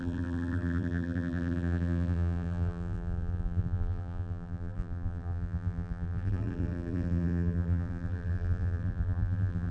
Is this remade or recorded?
remade